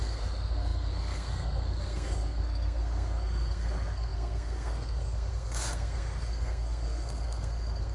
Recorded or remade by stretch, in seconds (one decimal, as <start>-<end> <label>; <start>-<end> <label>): 0.0-7.9 remade